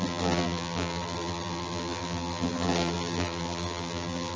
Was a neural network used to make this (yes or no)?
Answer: yes